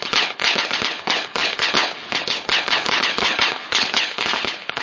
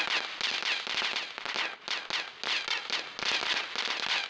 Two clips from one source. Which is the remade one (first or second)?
first